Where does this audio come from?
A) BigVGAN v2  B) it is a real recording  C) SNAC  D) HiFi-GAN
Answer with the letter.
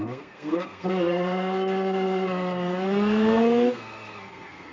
C